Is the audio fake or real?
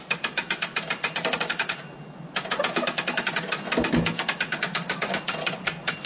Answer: real